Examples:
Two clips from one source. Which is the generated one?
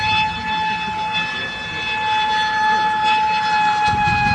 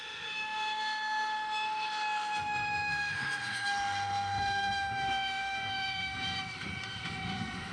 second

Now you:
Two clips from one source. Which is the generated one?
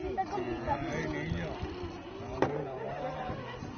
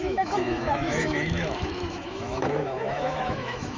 second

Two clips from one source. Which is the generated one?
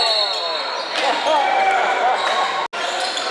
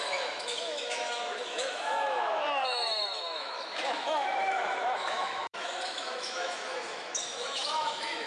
second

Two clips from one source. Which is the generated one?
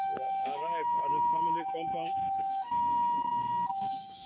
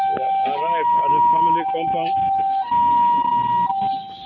first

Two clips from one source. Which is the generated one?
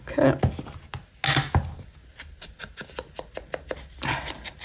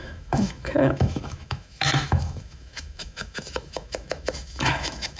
second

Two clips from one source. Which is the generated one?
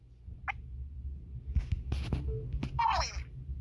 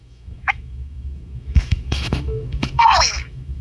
second